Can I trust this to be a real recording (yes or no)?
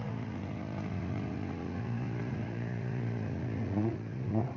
no